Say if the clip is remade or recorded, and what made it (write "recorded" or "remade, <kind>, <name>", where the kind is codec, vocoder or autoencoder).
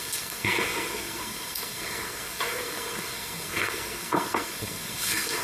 remade, codec, SNAC